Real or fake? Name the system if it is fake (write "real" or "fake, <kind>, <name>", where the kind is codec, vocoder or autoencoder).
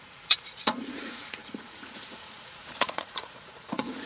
fake, vocoder, Vocos